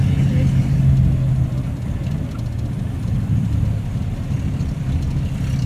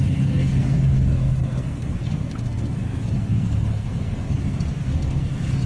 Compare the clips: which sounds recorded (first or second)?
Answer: first